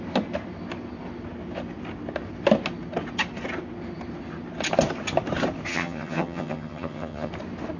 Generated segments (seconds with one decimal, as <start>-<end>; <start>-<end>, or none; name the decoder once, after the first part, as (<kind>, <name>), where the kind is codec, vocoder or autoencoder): 5.7-7.3 (vocoder, HiFi-GAN)